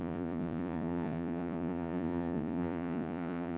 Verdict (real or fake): fake